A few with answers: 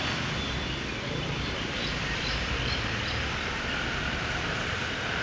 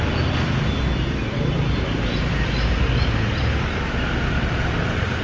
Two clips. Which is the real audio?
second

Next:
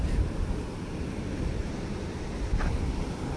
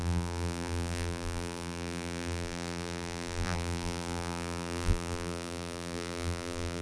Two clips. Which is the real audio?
first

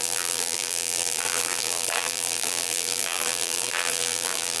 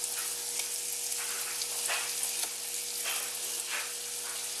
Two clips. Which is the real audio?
second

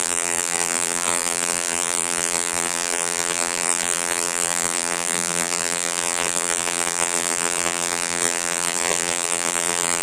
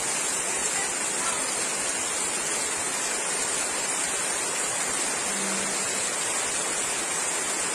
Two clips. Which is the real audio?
second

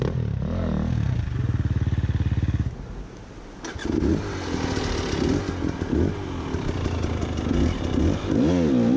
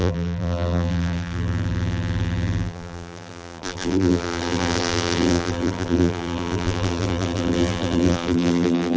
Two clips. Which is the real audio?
first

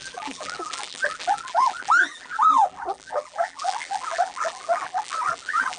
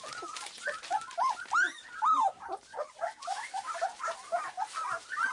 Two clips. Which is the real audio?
second